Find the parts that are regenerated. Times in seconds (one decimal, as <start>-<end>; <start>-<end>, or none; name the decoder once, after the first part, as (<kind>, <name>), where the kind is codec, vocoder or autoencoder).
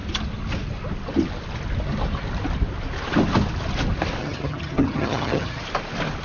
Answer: 4.2-5.6 (vocoder, HiFi-GAN)